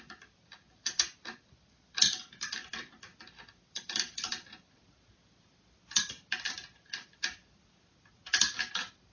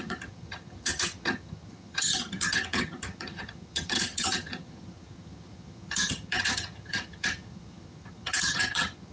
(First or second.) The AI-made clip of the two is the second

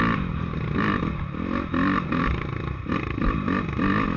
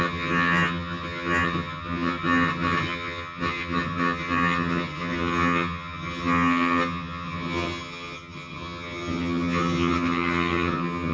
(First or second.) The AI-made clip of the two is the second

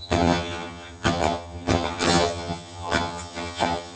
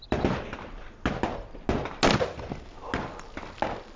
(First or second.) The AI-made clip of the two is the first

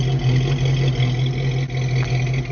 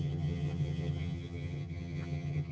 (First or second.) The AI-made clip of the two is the second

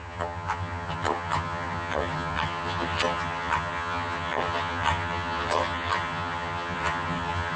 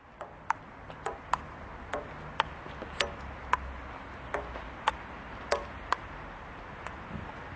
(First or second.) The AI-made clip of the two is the first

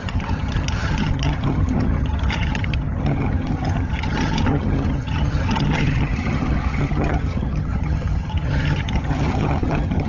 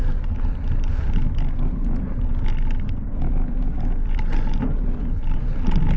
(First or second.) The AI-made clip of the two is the first